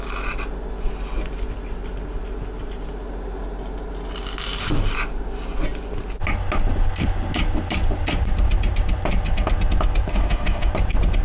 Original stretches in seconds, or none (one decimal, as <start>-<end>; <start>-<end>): 0.0-10.1; 10.7-11.2